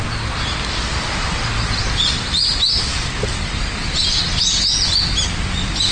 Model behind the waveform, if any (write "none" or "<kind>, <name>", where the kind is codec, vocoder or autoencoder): none